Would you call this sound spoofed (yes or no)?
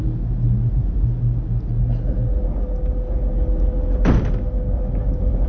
no